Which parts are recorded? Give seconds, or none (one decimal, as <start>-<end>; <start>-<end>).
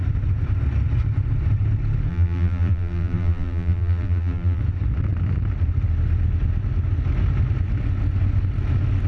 0.0-2.1; 4.6-9.1